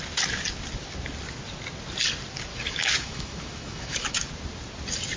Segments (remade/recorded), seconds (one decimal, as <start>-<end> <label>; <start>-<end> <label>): 0.0-2.5 recorded; 2.5-4.3 remade; 4.3-5.2 recorded